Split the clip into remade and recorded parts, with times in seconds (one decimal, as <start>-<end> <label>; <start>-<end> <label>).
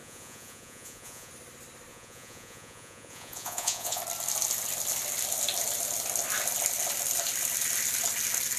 0.0-1.3 remade; 1.3-1.9 recorded; 1.9-4.0 remade; 4.0-8.6 recorded